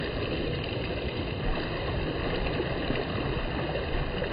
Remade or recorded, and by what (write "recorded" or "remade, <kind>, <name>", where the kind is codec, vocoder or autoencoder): recorded